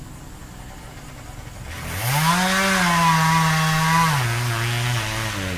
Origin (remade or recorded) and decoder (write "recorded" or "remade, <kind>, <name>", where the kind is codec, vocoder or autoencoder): recorded